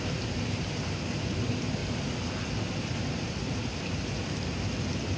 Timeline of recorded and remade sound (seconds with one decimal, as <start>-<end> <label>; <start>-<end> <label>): 0.0-1.8 remade; 1.8-2.6 recorded; 2.6-4.2 remade; 4.2-5.2 recorded